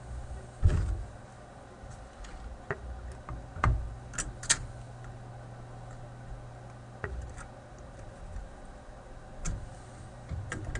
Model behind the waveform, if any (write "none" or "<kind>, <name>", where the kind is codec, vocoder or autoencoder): none